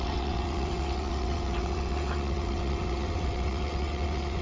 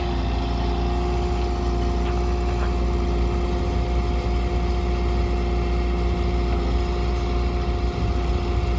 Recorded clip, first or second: second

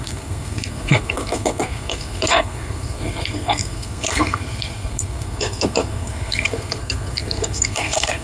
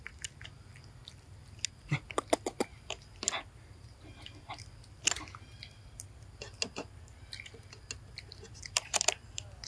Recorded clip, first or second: second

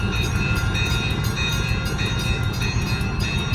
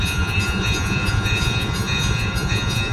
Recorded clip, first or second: first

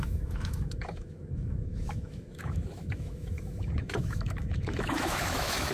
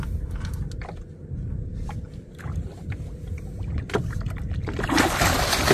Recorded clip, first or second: second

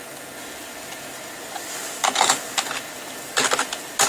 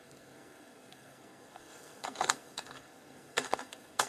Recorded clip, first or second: first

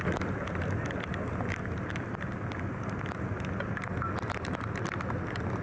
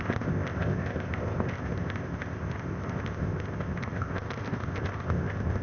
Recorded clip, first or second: first